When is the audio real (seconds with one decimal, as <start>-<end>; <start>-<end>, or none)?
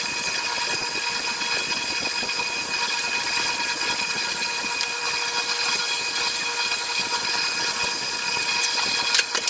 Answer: 0.0-9.5